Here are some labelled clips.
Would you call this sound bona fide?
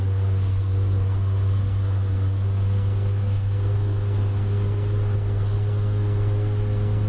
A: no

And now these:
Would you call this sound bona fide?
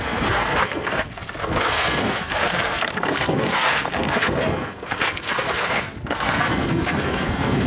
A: no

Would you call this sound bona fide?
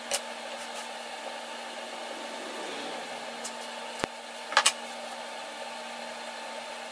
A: yes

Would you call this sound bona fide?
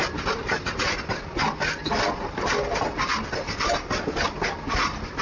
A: yes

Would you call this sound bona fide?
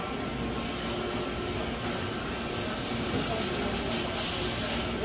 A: yes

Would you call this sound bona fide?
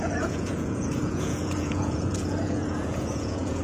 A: no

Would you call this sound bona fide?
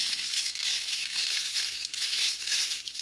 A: no